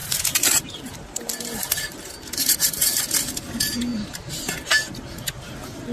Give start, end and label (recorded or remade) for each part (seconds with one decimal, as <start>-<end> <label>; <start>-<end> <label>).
0.0-3.0 remade; 3.0-3.9 recorded; 3.9-4.4 remade; 4.4-5.9 recorded